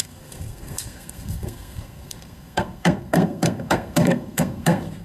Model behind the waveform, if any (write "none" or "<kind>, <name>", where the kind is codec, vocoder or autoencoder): codec, SNAC